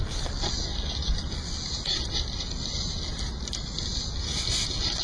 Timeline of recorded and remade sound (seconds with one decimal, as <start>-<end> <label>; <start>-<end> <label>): 0.0-5.0 recorded